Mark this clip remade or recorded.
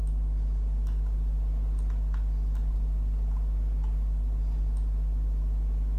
recorded